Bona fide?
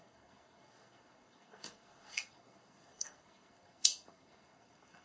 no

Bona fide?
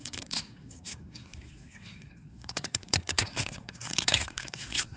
no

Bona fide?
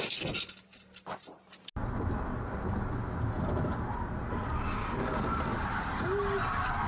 yes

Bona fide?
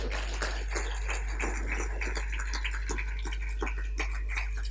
yes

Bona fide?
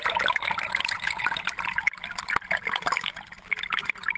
yes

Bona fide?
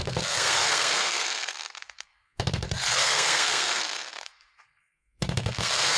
no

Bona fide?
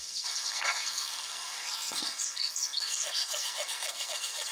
no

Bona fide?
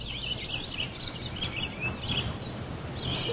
yes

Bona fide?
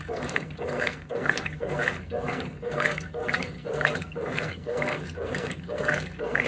no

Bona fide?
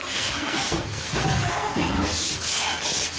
no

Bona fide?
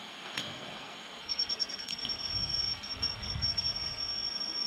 no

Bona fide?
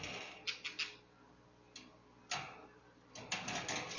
yes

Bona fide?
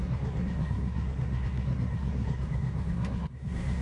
no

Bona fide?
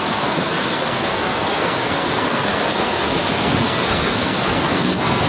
no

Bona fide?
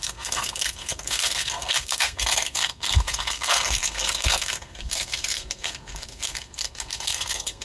no